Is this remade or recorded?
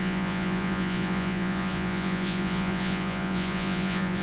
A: remade